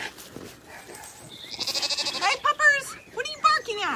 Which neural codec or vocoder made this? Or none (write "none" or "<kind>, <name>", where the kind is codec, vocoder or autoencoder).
none